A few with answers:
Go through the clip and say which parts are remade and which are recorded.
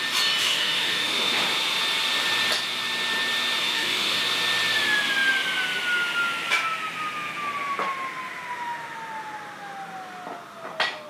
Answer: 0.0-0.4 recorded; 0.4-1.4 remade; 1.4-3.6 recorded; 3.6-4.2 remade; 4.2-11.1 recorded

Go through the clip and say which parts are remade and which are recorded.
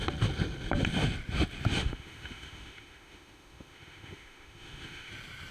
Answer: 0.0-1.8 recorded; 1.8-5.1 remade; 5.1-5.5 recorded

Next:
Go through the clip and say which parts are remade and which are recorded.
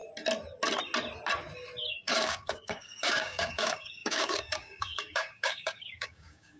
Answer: 0.0-1.9 recorded; 1.9-6.6 remade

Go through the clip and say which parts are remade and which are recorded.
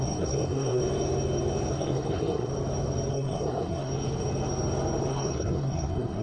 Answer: 0.0-0.8 remade; 0.8-1.7 recorded; 1.7-2.5 remade; 2.5-3.1 recorded; 3.1-3.9 remade; 3.9-5.1 recorded; 5.1-6.2 remade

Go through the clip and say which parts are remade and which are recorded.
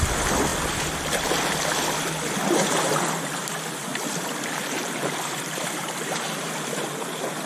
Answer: 0.0-0.5 recorded; 0.5-3.5 remade; 3.5-3.9 recorded; 3.9-7.5 remade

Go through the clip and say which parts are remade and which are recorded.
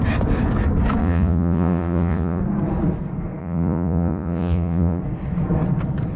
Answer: 0.0-1.0 recorded; 1.0-2.4 remade; 2.4-3.4 recorded; 3.4-5.0 remade; 5.0-6.2 recorded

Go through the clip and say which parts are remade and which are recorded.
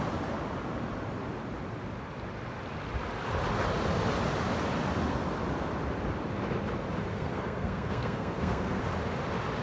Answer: 0.0-7.1 recorded; 7.1-8.8 remade; 8.8-9.6 recorded